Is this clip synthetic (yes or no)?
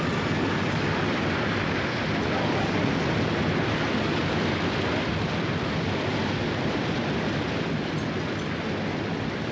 no